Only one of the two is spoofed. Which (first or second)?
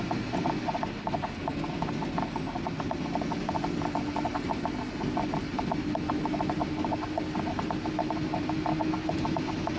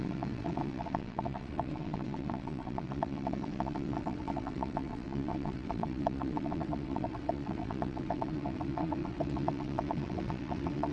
second